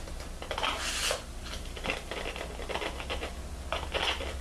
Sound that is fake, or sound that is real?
real